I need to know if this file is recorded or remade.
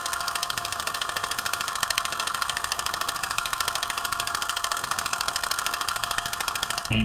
remade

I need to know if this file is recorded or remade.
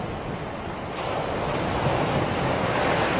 recorded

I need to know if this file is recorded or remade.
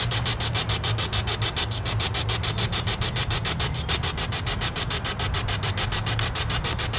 recorded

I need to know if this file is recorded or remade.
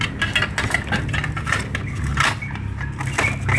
recorded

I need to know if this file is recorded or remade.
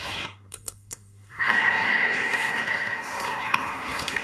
remade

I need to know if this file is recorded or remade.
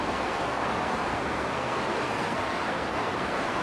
remade